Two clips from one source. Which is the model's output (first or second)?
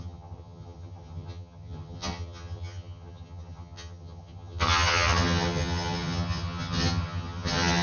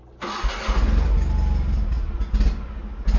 first